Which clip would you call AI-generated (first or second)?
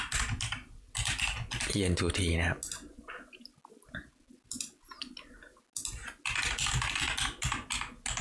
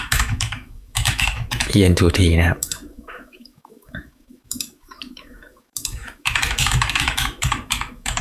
second